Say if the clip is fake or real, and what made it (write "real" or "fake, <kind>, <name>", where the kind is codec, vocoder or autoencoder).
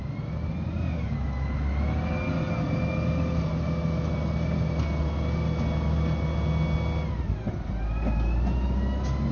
real